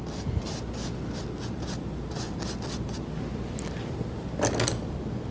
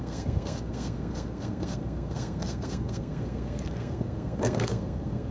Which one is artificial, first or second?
second